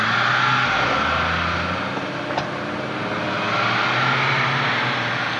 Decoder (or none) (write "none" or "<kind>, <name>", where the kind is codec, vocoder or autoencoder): none